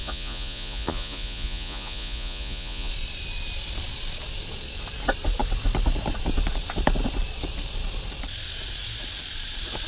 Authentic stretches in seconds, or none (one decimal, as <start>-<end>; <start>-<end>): 2.9-9.9